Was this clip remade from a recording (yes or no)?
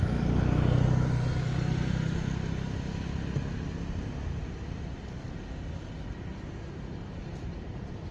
no